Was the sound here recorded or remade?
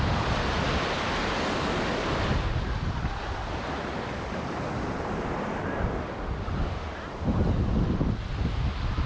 recorded